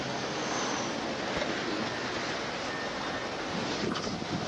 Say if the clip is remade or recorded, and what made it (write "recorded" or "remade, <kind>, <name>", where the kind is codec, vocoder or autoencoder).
recorded